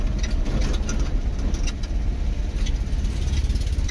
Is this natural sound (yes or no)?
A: yes